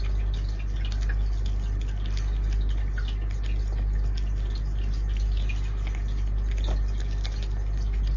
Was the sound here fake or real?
real